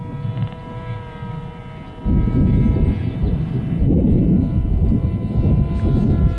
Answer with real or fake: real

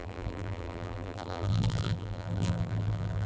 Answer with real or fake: fake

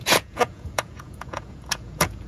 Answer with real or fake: fake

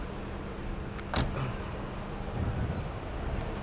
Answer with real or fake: real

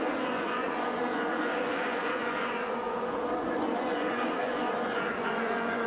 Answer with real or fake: fake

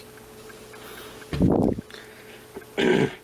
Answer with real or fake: real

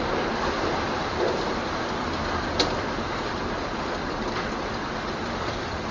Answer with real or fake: fake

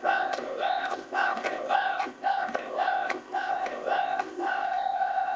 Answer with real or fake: fake